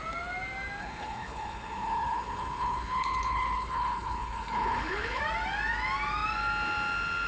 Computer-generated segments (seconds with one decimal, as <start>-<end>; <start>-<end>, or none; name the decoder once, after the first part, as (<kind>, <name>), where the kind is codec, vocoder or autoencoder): 0.8-5.2 (codec, HILCodec)